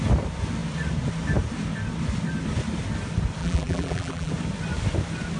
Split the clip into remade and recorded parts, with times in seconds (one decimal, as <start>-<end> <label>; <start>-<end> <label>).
0.0-3.4 recorded; 3.4-4.3 remade; 4.3-5.4 recorded